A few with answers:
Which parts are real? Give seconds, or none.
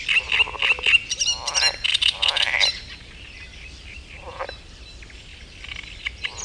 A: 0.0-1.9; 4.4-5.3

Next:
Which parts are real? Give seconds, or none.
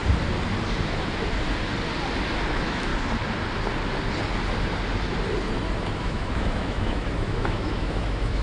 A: 0.0-2.5; 2.9-5.9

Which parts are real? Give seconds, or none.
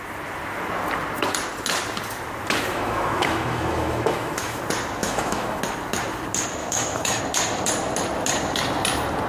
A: 0.0-2.7; 4.6-5.0; 5.6-6.6; 7.2-9.3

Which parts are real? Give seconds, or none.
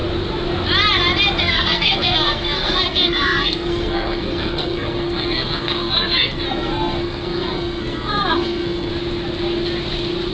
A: 0.0-1.4; 8.9-10.3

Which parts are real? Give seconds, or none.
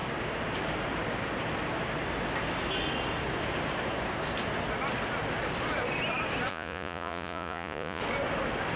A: 0.0-6.5; 8.0-8.8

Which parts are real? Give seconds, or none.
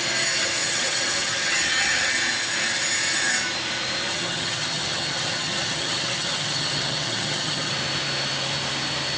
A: 0.0-0.4; 2.1-4.1; 7.7-9.2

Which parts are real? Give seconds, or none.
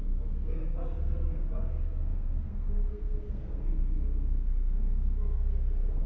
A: none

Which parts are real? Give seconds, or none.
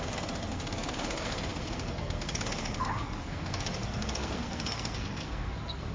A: none